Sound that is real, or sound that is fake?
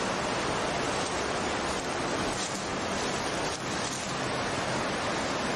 real